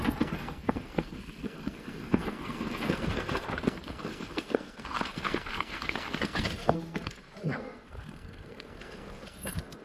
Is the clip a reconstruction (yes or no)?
yes